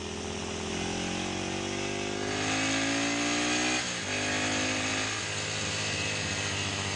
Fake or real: real